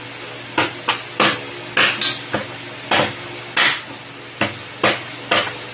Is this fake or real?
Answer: real